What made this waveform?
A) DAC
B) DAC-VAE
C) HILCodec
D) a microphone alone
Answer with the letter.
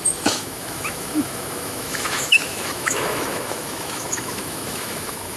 B